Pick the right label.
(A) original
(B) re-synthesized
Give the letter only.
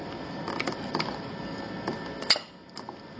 A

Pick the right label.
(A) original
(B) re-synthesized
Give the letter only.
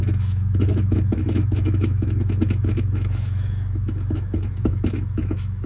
B